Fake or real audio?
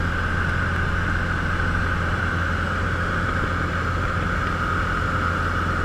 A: real